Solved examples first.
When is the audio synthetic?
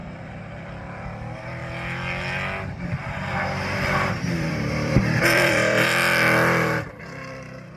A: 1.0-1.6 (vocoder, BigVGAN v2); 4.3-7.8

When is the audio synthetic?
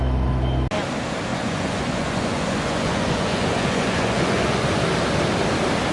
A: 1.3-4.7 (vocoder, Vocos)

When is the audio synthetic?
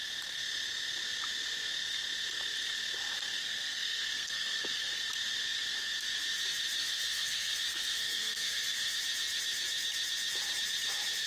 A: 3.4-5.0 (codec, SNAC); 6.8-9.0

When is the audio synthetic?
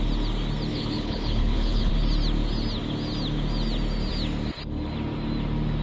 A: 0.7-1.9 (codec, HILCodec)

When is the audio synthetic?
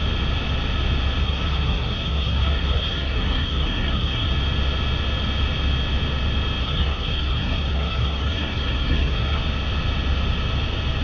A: 1.2-4.3 (codec, SNAC); 6.6-9.4